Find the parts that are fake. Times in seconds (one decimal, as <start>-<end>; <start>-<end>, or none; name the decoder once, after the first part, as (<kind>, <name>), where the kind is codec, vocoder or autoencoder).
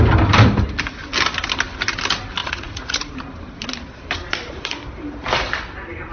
2.4-3.0 (vocoder, Vocos)